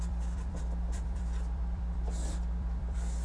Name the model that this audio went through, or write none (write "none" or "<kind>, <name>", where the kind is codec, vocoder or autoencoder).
vocoder, BigVGAN v2